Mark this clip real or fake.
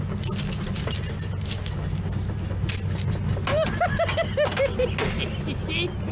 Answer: real